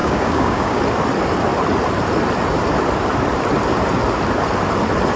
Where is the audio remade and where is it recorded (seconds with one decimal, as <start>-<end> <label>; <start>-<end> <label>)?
0.0-0.8 remade; 0.8-5.2 recorded